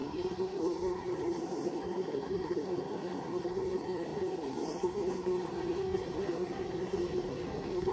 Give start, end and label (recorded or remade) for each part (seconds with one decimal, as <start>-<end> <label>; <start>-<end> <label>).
0.0-7.9 remade